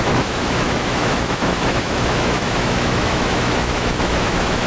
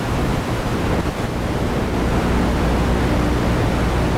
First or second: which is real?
second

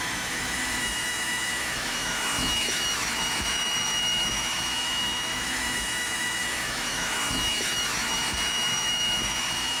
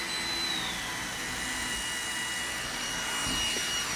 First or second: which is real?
second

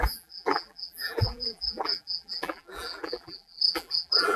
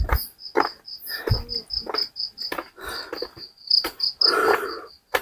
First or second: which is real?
second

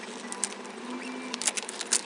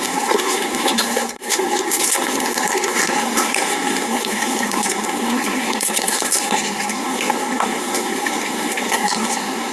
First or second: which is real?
first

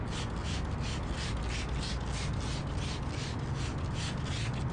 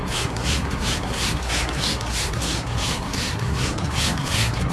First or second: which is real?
first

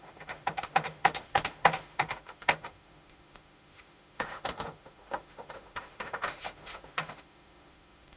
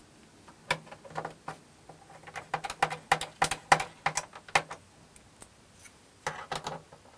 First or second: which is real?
second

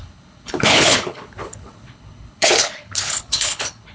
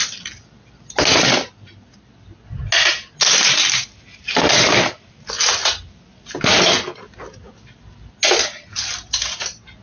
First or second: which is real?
second